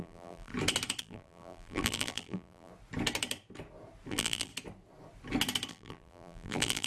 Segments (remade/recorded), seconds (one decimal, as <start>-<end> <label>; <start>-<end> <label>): 0.0-0.5 remade; 0.5-1.0 recorded; 1.0-2.7 remade; 2.7-4.1 recorded; 4.1-4.5 remade; 4.5-5.7 recorded; 5.7-6.9 remade